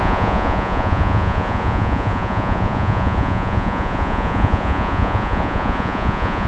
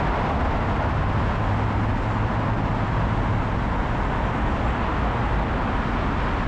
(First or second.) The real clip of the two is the second